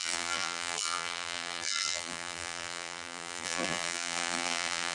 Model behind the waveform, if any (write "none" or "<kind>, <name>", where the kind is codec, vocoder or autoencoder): vocoder, BigVGAN v2